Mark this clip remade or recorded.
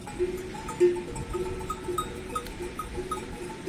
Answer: recorded